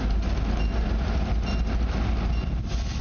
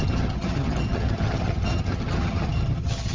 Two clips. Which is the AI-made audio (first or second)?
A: second